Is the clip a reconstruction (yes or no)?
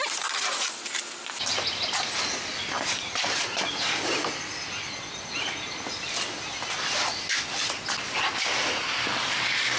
no